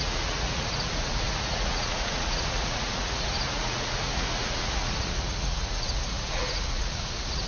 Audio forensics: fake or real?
fake